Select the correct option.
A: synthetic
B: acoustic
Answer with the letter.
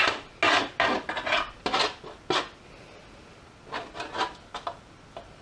B